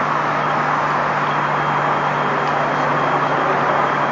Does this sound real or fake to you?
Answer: real